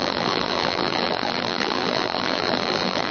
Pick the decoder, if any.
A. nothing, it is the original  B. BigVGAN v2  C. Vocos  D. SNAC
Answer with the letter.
B